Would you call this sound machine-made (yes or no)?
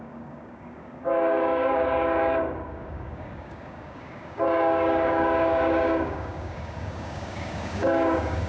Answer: yes